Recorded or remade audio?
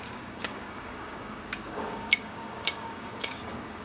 remade